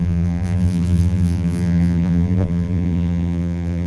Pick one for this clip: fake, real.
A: fake